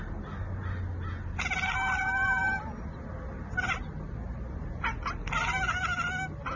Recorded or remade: recorded